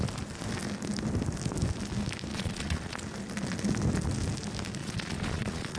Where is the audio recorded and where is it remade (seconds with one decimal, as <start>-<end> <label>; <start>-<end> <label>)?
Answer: 0.0-2.3 recorded; 2.3-3.0 remade; 3.0-4.8 recorded; 4.8-5.8 remade